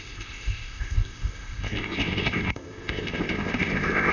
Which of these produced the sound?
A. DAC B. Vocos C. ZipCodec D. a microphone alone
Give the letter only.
C